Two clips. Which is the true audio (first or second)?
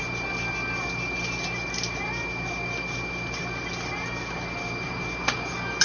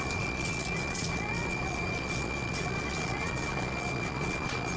first